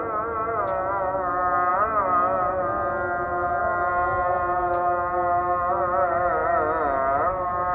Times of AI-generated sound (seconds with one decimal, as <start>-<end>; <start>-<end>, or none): none